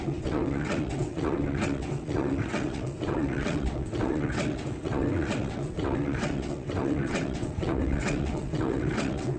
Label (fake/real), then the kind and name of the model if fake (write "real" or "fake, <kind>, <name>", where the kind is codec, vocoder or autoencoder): fake, vocoder, WaveNeXt